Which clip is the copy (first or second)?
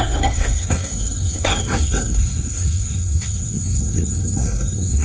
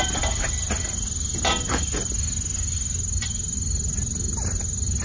first